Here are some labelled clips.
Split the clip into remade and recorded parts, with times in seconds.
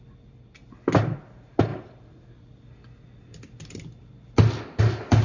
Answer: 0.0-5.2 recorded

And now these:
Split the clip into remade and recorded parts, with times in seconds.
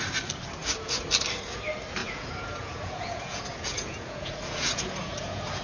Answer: 0.0-0.6 recorded; 0.6-1.1 remade; 1.1-2.0 recorded; 2.0-5.6 remade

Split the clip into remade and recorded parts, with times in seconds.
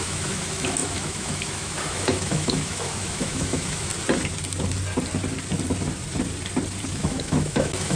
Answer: 0.0-3.9 remade; 3.9-6.9 recorded; 6.9-8.0 remade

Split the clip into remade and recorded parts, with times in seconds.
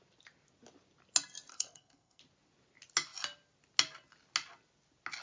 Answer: 0.0-1.5 recorded; 1.5-2.2 remade; 2.2-5.2 recorded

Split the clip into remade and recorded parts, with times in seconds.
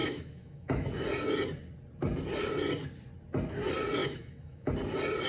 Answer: 0.0-0.9 remade; 0.9-4.0 recorded; 4.0-4.7 remade; 4.7-5.3 recorded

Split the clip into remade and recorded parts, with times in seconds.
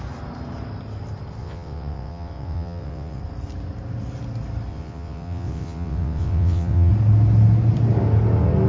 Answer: 0.0-1.4 recorded; 1.4-3.2 remade; 3.2-4.7 recorded; 4.7-6.9 remade; 6.9-8.7 recorded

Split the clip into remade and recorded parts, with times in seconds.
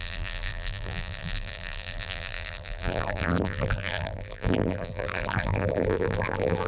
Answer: 0.0-6.7 remade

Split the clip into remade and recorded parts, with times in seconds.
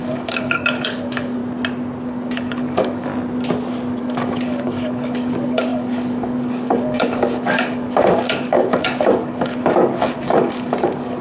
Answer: 0.0-1.4 remade; 1.4-2.0 recorded; 2.0-3.1 remade; 3.1-4.0 recorded; 4.0-11.2 remade